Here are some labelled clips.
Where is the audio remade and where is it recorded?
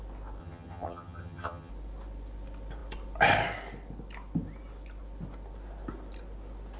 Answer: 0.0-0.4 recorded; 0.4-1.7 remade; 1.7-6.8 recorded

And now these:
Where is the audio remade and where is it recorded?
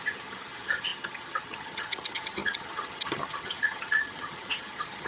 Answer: 0.0-5.1 remade